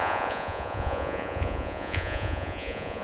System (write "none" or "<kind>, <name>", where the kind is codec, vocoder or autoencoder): vocoder, Vocos